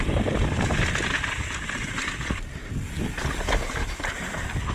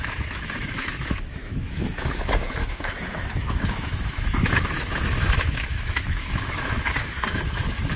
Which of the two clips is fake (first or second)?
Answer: second